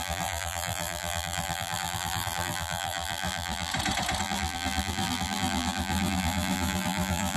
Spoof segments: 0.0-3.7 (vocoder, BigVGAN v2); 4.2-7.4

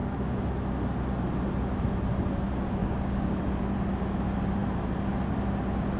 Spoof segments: 0.0-0.5 (codec, DAC); 2.8-3.4

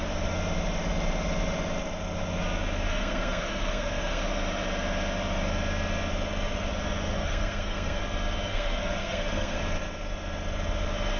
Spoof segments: 2.9-4.2 (codec, SNAC); 7.1-8.0; 8.5-9.6

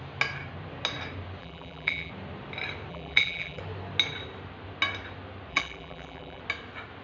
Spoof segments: 1.4-2.1 (vocoder, BigVGAN v2); 2.9-3.6; 5.5-6.4

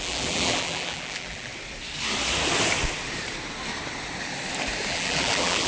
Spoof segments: 0.0-1.5 (vocoder, BigVGAN v2); 4.9-5.7